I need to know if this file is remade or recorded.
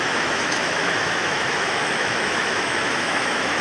remade